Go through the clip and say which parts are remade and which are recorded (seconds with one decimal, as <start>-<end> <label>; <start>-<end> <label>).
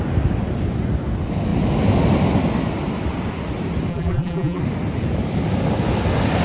0.0-3.9 recorded; 3.9-4.6 remade; 4.6-6.4 recorded